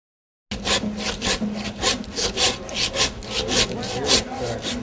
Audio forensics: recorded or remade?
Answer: recorded